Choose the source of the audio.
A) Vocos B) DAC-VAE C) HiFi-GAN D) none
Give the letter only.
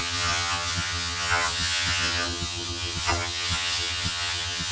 C